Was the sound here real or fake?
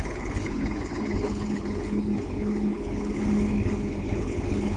fake